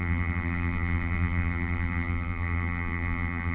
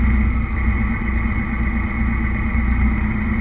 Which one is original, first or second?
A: second